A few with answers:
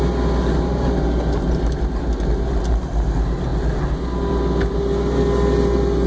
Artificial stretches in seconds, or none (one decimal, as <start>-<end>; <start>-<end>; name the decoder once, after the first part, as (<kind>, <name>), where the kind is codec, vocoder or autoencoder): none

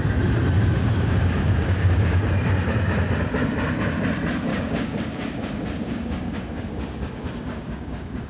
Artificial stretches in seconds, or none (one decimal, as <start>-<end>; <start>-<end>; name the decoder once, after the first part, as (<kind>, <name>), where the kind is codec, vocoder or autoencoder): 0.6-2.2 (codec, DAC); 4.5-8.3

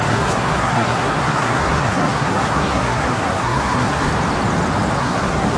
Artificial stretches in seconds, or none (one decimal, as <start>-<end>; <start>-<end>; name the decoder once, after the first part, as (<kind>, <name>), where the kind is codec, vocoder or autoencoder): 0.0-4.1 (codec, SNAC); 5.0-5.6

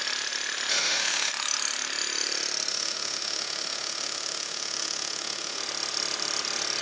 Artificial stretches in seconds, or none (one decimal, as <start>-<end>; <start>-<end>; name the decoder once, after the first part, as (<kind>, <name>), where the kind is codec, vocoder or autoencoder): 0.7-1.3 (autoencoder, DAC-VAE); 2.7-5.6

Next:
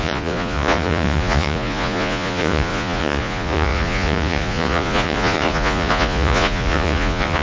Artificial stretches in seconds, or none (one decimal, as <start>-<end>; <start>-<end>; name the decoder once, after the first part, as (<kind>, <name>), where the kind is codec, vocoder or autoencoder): 0.0-7.4 (vocoder, Vocos)

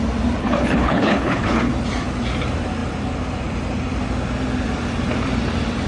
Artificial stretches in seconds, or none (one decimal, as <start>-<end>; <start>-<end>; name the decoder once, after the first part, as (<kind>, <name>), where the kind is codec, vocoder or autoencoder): 0.4-1.7 (codec, HILCodec)

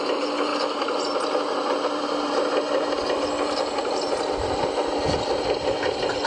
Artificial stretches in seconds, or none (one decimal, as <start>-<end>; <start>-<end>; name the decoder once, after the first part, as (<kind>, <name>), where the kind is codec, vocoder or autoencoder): none

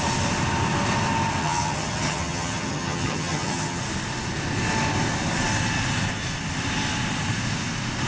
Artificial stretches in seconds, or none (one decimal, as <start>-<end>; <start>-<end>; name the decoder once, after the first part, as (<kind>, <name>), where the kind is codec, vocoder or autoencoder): 1.4-3.8 (vocoder, HiFi-GAN)